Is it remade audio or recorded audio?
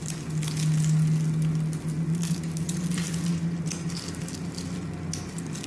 recorded